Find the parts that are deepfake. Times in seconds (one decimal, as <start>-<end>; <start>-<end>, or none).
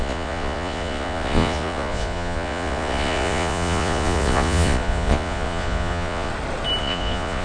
0.0-6.3; 6.8-7.4